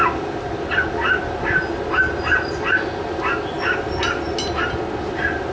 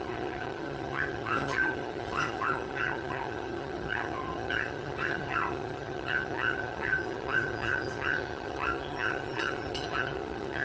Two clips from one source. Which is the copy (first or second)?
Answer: second